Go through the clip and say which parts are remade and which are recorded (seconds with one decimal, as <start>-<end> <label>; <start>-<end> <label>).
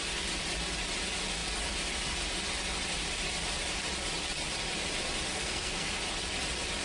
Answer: 0.0-5.3 recorded; 5.3-6.0 remade; 6.0-6.8 recorded